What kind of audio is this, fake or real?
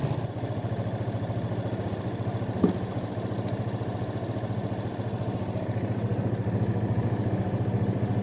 real